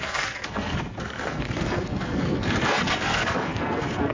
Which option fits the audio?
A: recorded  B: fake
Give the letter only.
B